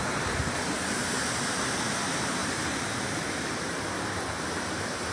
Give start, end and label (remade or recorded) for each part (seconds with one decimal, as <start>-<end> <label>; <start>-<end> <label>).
0.0-5.1 remade